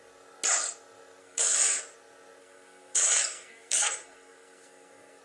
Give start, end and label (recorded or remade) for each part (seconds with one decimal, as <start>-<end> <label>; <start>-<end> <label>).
0.0-1.2 recorded; 1.2-1.8 remade; 1.8-2.4 recorded; 2.4-5.2 remade